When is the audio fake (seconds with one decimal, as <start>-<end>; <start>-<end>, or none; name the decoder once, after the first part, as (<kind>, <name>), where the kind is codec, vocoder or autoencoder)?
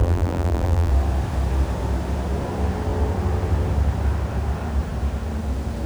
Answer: 0.0-0.9 (vocoder, BigVGAN v2)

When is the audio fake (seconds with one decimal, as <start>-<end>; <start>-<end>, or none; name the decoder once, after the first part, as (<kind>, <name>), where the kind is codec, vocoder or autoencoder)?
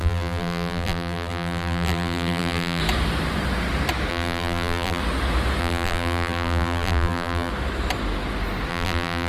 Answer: 0.0-2.8 (vocoder, BigVGAN v2); 4.1-5.0; 5.6-7.5; 8.7-9.3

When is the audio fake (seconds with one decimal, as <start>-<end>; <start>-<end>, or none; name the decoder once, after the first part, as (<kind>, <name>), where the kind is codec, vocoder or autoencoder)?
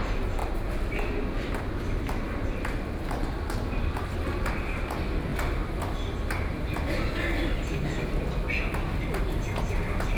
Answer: 0.0-5.3 (vocoder, BigVGAN v2); 9.2-10.2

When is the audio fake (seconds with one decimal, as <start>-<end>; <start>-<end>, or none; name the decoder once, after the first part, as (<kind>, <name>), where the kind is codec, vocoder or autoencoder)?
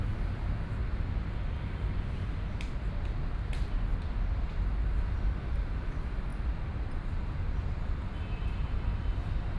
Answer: none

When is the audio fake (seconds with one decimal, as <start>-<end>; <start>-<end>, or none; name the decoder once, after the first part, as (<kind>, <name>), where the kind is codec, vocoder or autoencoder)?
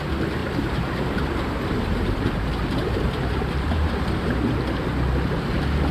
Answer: 0.4-3.9 (vocoder, BigVGAN v2)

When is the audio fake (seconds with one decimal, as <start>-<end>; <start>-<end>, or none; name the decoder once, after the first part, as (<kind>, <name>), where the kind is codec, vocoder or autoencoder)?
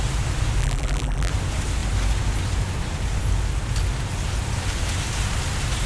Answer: 0.6-1.3 (vocoder, BigVGAN v2)